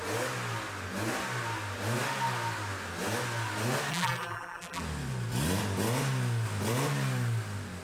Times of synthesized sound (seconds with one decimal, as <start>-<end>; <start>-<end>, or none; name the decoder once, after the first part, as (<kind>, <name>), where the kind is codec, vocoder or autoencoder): 3.9-4.8 (vocoder, BigVGAN v2)